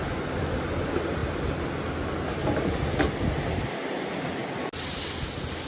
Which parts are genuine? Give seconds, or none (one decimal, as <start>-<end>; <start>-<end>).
0.0-5.7